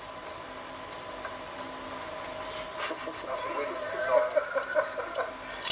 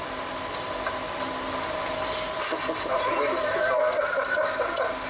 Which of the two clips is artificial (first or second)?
second